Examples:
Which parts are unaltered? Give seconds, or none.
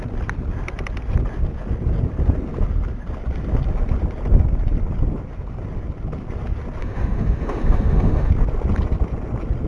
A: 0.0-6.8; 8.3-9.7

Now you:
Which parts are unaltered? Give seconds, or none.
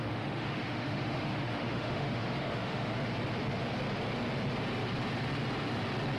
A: 2.9-6.2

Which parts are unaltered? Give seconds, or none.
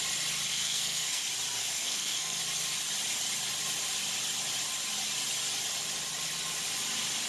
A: 0.0-0.5; 1.2-1.6; 2.4-7.3